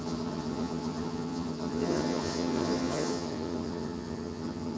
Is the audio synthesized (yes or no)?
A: yes